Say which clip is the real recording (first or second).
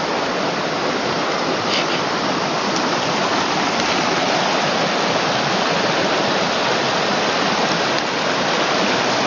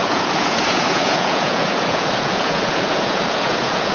first